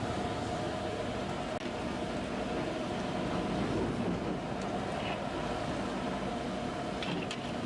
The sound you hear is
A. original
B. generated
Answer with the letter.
A